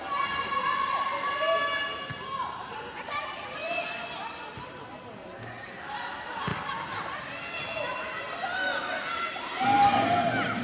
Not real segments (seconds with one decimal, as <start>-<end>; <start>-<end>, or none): none